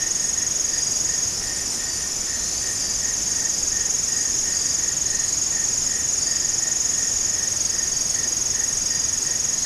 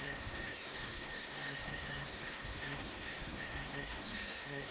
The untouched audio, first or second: first